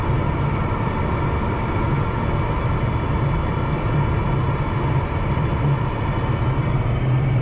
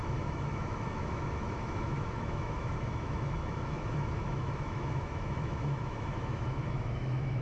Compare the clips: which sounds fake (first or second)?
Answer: second